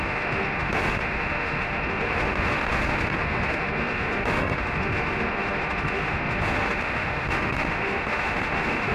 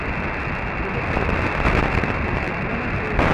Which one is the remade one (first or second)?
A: first